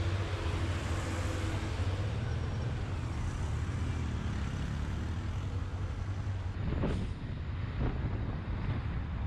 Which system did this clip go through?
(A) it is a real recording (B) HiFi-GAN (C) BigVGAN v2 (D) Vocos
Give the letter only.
A